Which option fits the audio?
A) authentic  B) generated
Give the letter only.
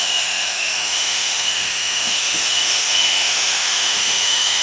B